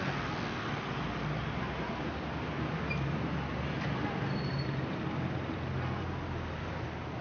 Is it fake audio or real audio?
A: real